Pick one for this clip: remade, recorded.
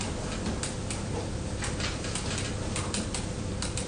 recorded